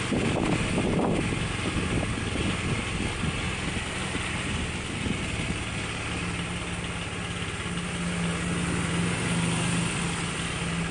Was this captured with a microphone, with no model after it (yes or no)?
yes